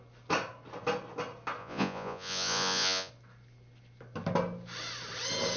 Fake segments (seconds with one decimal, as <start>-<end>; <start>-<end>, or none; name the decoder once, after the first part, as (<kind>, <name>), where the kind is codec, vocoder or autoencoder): 1.6-3.1 (vocoder, Vocos)